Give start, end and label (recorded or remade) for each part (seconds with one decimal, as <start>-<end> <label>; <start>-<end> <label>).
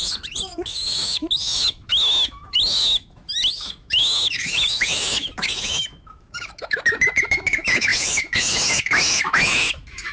0.0-10.1 remade